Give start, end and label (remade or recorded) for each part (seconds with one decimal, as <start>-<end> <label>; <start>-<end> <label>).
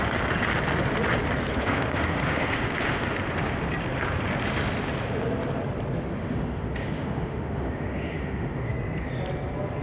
0.0-1.5 recorded; 1.5-3.2 remade; 3.2-6.2 recorded; 6.2-8.7 remade; 8.7-9.8 recorded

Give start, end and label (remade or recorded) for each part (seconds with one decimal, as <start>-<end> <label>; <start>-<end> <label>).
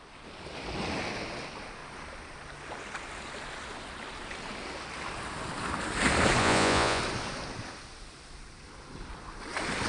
0.0-6.4 recorded; 6.4-7.0 remade; 7.0-9.9 recorded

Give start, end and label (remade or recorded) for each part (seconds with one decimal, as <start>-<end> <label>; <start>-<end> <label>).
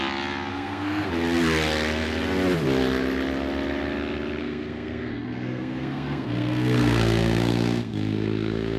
0.0-0.5 recorded; 0.5-1.1 remade; 1.1-4.4 recorded; 4.4-8.8 remade